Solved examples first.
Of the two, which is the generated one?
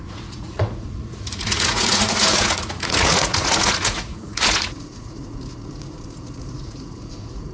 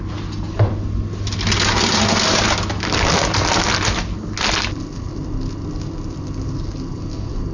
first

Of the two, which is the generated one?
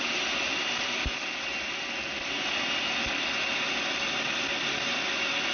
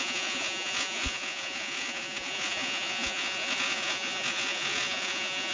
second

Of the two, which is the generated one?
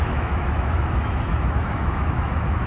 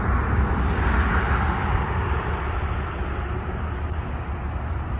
first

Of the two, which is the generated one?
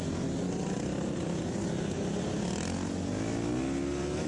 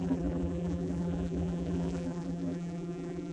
second